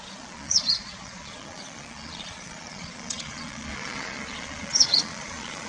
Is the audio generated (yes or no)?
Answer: yes